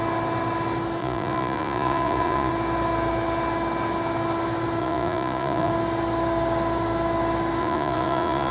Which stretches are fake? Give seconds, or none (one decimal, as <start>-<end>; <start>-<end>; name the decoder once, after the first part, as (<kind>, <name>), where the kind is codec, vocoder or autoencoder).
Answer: 1.0-2.5 (vocoder, Vocos); 4.8-5.7; 7.6-8.5